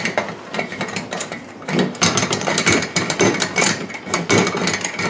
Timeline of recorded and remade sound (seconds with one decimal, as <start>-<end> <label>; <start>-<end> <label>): 0.0-0.7 recorded; 0.7-1.6 remade; 1.6-2.2 recorded; 2.2-3.9 remade; 3.9-5.1 recorded

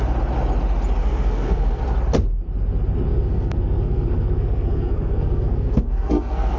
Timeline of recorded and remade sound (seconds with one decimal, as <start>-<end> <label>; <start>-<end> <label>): 0.0-1.0 recorded; 1.0-1.8 remade; 1.8-3.1 recorded; 3.1-6.6 remade

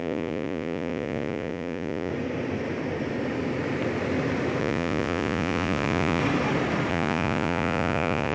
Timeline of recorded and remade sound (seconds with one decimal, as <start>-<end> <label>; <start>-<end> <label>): 0.0-2.1 remade; 2.1-4.6 recorded; 4.6-6.2 remade; 6.2-6.9 recorded; 6.9-8.3 remade

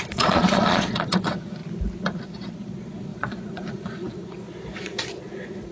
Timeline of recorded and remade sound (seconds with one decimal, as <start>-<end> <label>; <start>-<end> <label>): 0.0-1.6 remade; 1.6-2.2 recorded; 2.2-5.7 remade

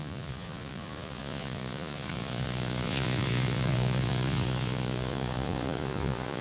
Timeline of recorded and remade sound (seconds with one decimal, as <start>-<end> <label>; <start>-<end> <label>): 0.0-6.4 remade

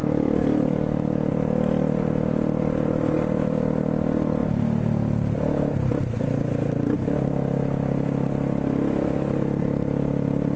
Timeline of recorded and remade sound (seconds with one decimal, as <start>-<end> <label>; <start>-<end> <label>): 0.0-1.3 remade; 1.3-10.6 recorded

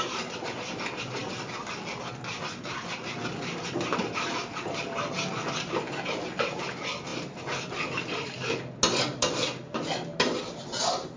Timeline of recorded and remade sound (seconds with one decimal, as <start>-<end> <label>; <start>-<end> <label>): 0.0-7.1 recorded; 7.1-7.9 remade; 7.9-11.2 recorded